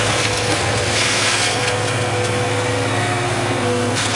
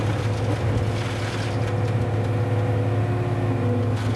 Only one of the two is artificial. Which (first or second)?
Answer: first